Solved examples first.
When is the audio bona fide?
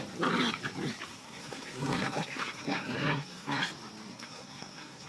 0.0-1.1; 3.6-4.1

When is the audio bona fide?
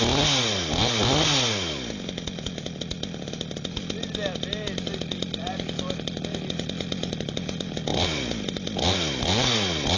0.0-10.0